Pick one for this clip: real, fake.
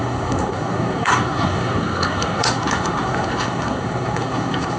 fake